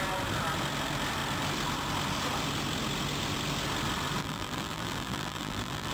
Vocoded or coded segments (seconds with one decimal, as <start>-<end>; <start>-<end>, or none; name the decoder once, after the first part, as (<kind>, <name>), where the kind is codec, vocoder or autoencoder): 4.2-5.9 (vocoder, BigVGAN v2)